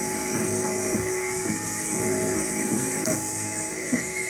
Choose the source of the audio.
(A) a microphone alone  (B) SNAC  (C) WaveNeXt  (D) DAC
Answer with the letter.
B